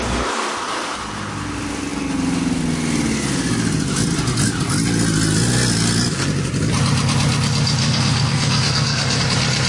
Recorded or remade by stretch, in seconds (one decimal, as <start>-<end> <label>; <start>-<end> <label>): 0.0-7.8 recorded; 7.8-9.2 remade; 9.2-9.7 recorded